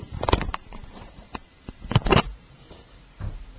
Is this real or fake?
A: fake